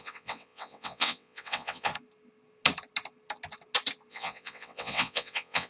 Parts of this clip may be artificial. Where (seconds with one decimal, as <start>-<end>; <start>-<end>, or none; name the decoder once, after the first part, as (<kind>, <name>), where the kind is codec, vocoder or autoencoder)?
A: 0.0-1.9 (vocoder, WaveNeXt); 4.1-5.7